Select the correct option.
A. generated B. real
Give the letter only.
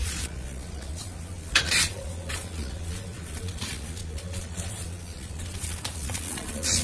A